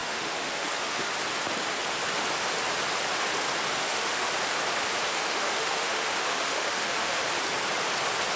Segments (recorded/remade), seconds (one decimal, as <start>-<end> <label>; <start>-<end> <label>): 0.0-1.1 remade; 1.1-3.8 recorded; 3.8-4.3 remade; 4.3-5.1 recorded; 5.1-7.2 remade; 7.2-8.4 recorded